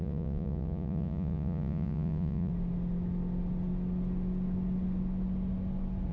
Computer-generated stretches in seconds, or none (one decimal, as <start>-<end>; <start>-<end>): 0.0-2.5